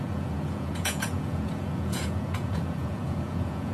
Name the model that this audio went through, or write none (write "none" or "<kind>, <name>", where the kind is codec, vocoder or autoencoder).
vocoder, Vocos